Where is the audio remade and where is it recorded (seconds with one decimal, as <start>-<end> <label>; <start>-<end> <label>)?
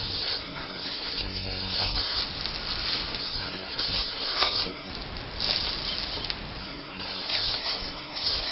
0.0-2.2 remade; 2.2-3.2 recorded; 3.2-4.9 remade; 4.9-6.6 recorded; 6.6-8.5 remade